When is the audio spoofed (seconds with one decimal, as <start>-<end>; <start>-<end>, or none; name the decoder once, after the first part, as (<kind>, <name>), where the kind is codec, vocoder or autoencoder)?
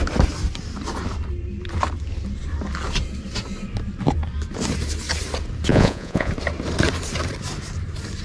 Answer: 5.7-6.3 (vocoder, Vocos)